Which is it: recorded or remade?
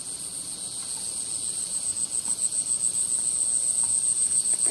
recorded